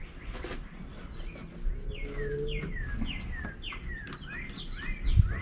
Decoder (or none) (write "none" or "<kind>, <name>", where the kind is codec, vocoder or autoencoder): none